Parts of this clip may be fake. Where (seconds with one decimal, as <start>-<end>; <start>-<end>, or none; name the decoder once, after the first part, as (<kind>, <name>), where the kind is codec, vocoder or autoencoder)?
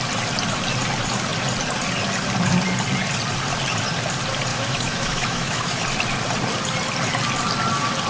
4.5-5.8 (autoencoder, DAC-VAE)